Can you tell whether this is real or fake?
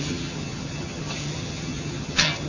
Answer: fake